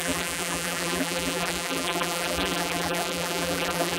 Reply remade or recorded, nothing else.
remade